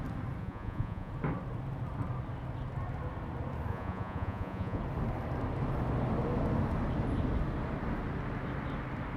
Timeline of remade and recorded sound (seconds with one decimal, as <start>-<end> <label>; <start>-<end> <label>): 0.0-0.4 recorded; 0.4-1.1 remade; 1.1-3.7 recorded; 3.7-4.8 remade; 4.8-9.2 recorded